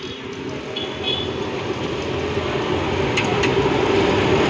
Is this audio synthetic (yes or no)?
no